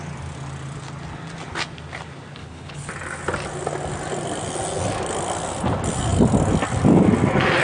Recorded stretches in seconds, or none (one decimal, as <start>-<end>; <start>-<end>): 0.0-2.4; 2.9-7.6